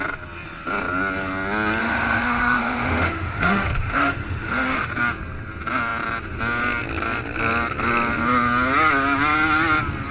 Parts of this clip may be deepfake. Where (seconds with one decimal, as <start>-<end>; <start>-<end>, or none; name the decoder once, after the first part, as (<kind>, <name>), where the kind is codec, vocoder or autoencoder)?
1.8-4.9 (autoencoder, DAC-VAE)